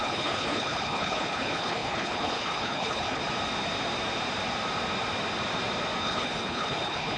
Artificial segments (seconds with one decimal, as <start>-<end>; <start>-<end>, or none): 0.0-3.2; 6.0-7.2